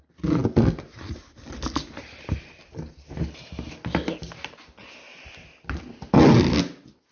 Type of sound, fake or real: real